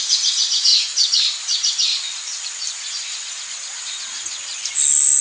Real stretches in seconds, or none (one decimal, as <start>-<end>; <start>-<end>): 0.7-3.8; 4.5-5.2